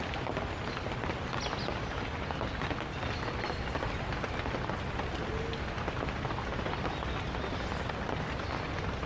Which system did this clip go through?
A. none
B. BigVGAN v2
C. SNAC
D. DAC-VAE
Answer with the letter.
A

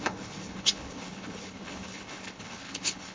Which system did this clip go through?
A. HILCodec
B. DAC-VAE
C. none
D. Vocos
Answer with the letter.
A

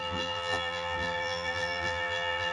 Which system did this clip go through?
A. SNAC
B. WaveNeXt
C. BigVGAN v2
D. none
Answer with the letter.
C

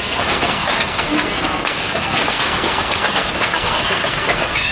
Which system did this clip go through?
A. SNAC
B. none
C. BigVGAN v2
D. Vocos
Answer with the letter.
A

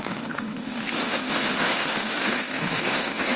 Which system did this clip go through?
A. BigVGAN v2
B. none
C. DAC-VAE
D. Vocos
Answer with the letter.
C